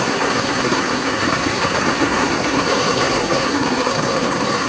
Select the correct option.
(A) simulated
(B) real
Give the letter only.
A